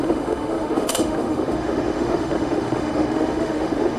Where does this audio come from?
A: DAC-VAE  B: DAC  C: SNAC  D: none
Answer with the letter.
A